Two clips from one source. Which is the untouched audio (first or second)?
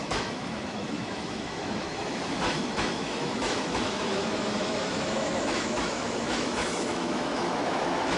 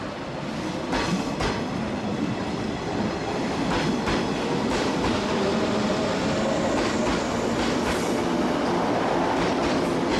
second